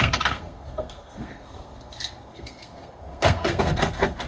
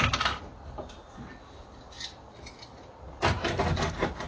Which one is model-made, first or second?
first